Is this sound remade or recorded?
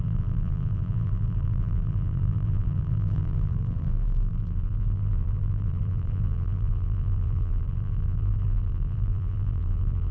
remade